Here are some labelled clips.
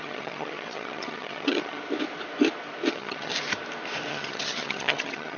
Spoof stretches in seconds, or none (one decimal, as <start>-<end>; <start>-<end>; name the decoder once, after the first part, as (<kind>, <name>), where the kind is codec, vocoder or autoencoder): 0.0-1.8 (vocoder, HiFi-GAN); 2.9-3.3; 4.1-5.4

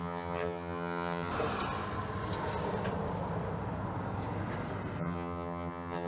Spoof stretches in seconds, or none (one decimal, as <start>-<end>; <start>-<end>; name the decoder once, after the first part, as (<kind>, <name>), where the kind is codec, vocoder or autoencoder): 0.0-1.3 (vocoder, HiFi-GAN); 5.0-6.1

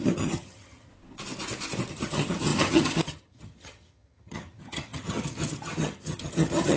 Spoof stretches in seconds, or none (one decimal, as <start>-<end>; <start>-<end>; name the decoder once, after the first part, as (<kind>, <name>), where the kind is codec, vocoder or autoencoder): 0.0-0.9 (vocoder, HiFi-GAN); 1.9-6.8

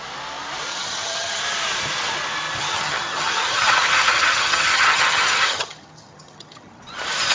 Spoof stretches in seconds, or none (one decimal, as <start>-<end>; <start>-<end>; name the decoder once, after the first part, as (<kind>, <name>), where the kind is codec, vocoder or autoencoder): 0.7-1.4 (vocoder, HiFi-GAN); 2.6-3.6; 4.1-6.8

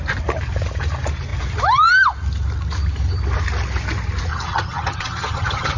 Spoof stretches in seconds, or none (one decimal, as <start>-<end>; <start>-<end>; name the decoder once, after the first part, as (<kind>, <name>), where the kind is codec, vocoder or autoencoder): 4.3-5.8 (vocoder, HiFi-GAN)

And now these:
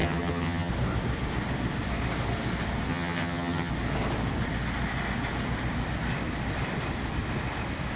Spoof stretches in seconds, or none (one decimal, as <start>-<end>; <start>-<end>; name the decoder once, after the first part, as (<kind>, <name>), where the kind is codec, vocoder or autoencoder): 0.0-0.7 (vocoder, HiFi-GAN); 2.9-3.7

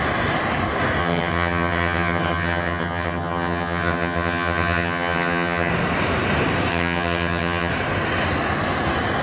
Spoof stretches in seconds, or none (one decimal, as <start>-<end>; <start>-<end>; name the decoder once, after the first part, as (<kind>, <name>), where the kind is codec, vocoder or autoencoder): 1.0-5.7 (vocoder, HiFi-GAN); 6.7-7.7